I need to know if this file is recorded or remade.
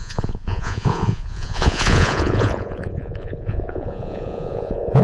remade